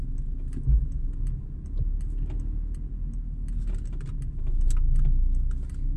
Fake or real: real